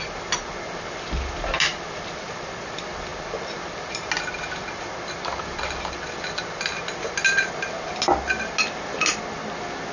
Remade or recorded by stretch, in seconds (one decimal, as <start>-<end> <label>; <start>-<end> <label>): 0.0-9.9 recorded